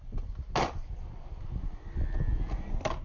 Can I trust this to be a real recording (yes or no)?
yes